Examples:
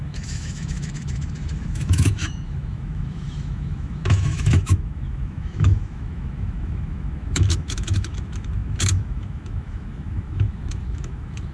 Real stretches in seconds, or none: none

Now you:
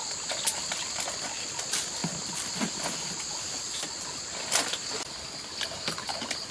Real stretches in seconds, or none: 0.0-6.5

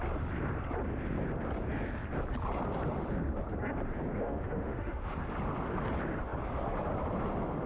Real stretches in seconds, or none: 0.0-4.1; 5.1-7.7

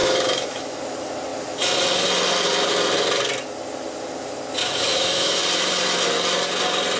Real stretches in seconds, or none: 0.8-4.6; 5.4-7.0

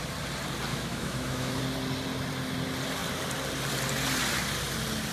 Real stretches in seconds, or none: 0.0-0.7; 1.6-5.1

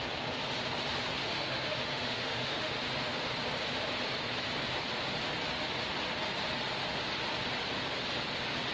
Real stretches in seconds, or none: 0.0-1.2; 2.8-8.7

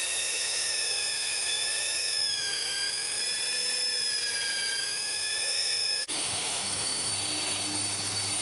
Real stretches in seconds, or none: 3.2-4.8; 7.1-8.4